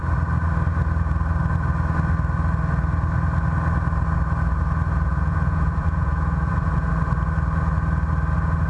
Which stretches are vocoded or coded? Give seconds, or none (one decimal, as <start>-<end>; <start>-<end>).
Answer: 5.1-6.9